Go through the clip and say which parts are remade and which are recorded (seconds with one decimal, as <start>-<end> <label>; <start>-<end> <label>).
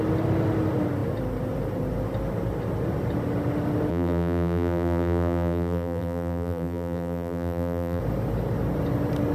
0.0-3.9 recorded; 3.9-8.0 remade; 8.0-9.3 recorded